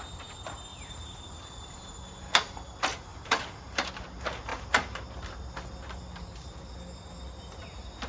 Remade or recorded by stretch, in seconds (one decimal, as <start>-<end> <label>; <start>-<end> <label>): 0.0-0.7 recorded; 0.7-1.8 remade; 1.8-3.1 recorded; 3.1-3.9 remade; 3.9-4.5 recorded; 4.5-5.0 remade; 5.0-8.1 recorded